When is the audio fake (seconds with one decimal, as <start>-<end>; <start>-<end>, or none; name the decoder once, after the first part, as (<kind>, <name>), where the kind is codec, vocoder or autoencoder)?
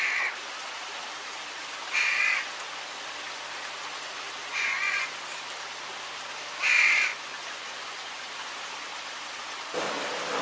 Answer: 4.5-5.2 (vocoder, Vocos); 7.1-8.3